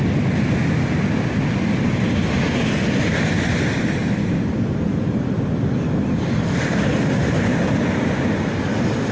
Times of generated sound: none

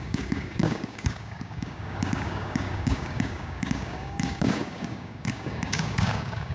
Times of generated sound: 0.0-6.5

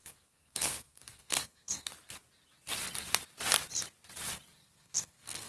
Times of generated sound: 0.0-1.9; 4.6-5.5

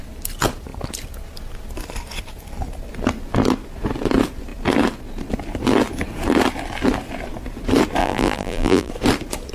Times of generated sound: 8.0-8.9